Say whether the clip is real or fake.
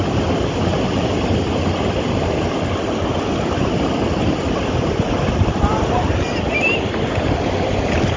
real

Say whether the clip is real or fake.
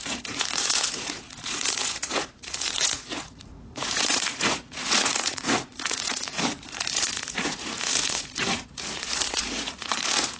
fake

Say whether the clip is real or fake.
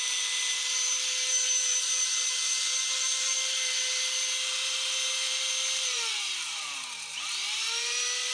fake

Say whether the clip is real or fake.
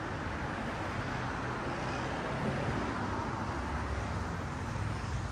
real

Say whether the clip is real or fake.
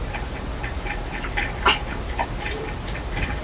real